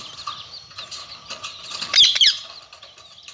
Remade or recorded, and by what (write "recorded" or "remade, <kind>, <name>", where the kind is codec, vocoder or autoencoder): recorded